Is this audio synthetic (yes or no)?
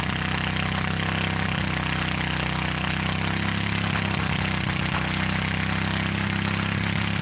no